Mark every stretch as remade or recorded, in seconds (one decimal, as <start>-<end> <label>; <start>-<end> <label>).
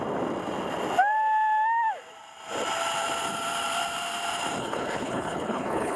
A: 0.0-4.6 recorded; 4.6-6.0 remade